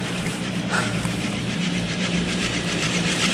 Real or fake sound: fake